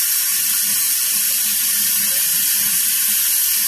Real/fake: real